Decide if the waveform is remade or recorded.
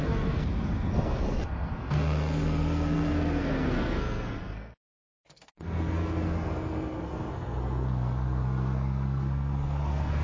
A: remade